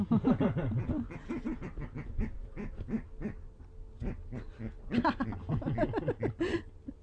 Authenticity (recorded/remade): recorded